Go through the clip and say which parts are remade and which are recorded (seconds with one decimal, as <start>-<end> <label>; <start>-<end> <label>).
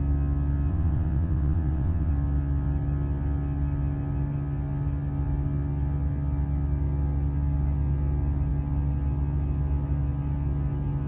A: 0.0-0.7 recorded; 0.7-2.1 remade; 2.1-11.1 recorded